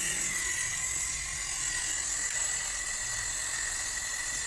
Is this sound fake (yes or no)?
no